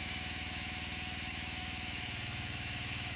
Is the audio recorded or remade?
remade